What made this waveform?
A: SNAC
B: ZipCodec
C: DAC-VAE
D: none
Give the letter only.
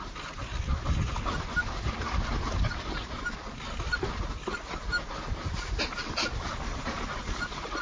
D